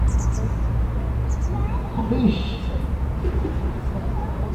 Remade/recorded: recorded